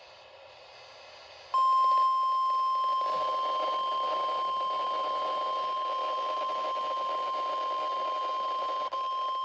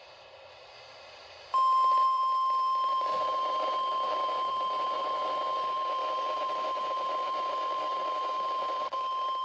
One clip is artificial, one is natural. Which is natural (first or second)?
first